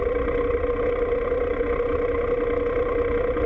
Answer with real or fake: real